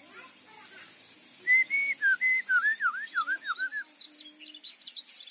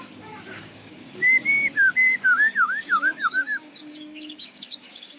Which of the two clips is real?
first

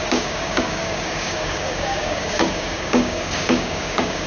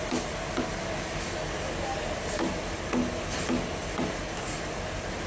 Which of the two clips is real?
second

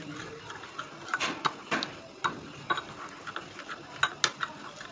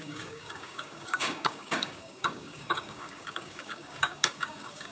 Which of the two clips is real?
first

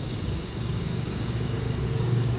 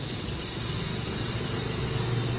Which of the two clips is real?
second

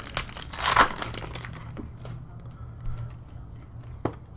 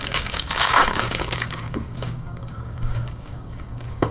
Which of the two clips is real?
first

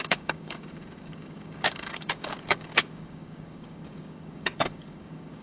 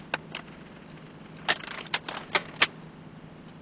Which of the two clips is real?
second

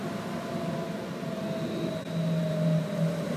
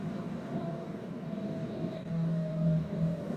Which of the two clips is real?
first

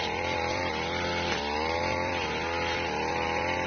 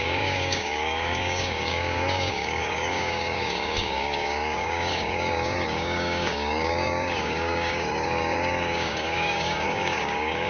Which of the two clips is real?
first